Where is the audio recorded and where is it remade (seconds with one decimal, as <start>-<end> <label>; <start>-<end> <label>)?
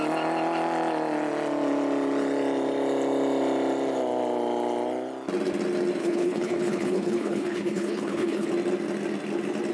0.0-6.0 recorded; 6.0-8.5 remade; 8.5-9.7 recorded